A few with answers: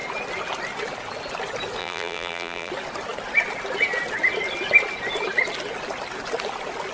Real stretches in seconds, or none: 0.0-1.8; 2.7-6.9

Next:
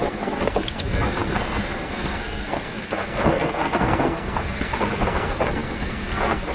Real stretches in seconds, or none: none

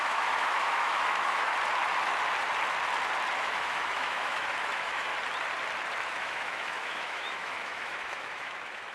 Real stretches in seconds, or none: 1.5-3.4; 5.1-6.1

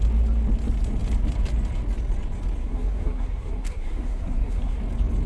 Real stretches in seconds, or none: 0.0-2.6; 4.8-5.3

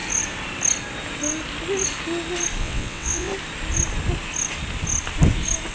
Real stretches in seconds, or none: 0.0-2.6; 3.3-5.7